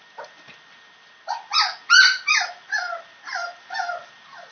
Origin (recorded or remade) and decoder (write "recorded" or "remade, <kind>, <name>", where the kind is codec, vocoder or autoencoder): recorded